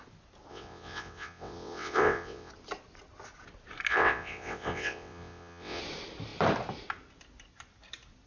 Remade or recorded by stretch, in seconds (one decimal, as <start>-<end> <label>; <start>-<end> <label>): 0.0-0.5 recorded; 0.5-2.5 remade; 2.5-3.9 recorded; 3.9-5.8 remade; 5.8-8.3 recorded